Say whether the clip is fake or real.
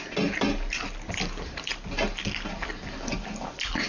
real